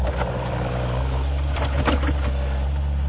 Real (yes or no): yes